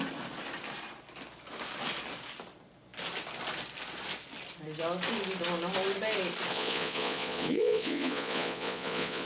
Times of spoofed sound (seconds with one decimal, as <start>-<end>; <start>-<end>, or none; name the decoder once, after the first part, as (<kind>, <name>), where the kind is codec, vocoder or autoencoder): 6.5-9.3 (vocoder, Vocos)